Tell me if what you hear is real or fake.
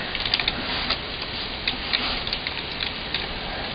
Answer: real